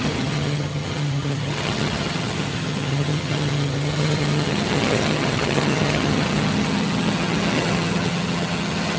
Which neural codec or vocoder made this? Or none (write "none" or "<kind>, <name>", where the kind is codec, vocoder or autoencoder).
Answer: vocoder, HiFi-GAN